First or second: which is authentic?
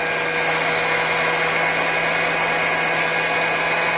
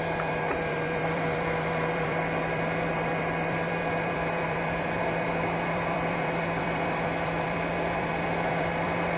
first